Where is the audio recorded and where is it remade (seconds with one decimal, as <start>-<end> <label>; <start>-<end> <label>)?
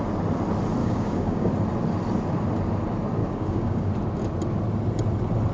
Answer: 0.0-0.8 recorded; 0.8-1.5 remade; 1.5-3.2 recorded; 3.2-3.9 remade; 3.9-5.5 recorded